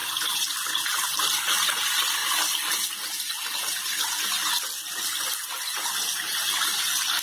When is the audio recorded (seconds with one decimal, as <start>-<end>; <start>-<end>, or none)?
1.3-7.2